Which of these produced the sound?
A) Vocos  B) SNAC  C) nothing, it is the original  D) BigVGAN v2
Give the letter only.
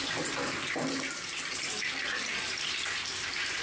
C